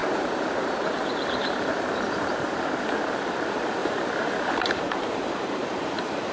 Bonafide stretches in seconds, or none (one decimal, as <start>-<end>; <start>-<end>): none